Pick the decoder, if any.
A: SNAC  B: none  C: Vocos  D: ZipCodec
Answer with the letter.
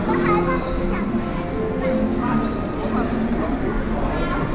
B